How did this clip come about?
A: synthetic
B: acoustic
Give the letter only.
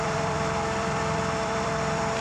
A